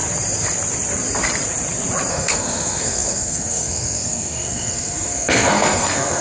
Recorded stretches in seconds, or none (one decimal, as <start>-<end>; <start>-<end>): 0.0-2.1